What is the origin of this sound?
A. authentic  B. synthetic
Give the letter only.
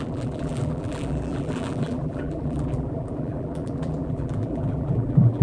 B